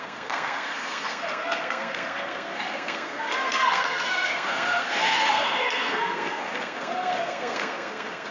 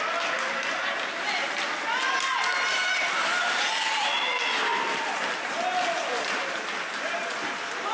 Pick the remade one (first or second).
first